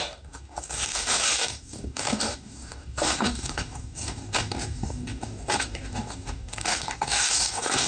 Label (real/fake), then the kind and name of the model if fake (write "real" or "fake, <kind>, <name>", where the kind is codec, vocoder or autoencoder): fake, codec, DAC